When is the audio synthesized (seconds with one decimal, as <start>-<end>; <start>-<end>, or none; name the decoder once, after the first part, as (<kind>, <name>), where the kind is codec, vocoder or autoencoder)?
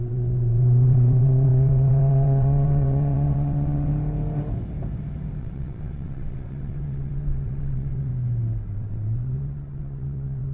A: 0.0-3.9 (vocoder, WaveNeXt); 5.4-8.1; 8.7-10.5